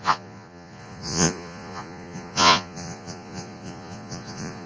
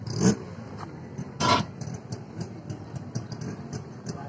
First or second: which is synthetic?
first